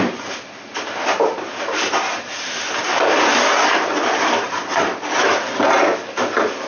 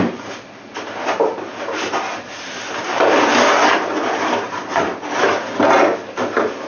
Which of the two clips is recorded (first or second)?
second